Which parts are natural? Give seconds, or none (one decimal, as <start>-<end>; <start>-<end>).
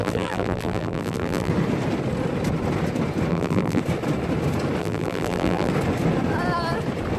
1.5-3.3; 3.8-4.8; 5.7-7.2